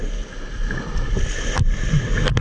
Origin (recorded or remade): recorded